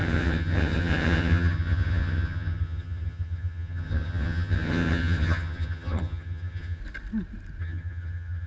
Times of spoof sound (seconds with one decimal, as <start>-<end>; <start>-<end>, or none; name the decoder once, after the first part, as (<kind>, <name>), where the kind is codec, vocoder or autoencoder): 0.0-6.8 (vocoder, HiFi-GAN); 7.6-8.5